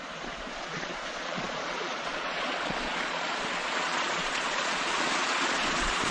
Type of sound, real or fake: fake